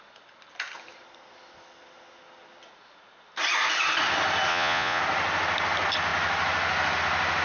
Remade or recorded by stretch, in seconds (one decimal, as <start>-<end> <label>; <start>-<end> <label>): 0.0-4.5 recorded; 4.5-5.0 remade; 5.0-7.4 recorded